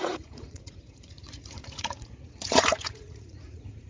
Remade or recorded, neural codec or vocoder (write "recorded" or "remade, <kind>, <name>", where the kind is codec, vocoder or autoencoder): remade, vocoder, Vocos